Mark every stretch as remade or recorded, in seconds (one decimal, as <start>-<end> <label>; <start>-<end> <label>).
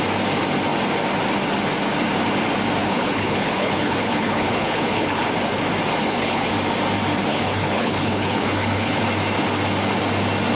0.0-2.8 recorded; 2.8-5.3 remade; 5.3-6.0 recorded; 6.0-6.5 remade; 6.5-7.3 recorded; 7.3-9.0 remade; 9.0-10.5 recorded